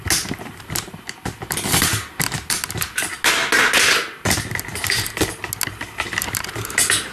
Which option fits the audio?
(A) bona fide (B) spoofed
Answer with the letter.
A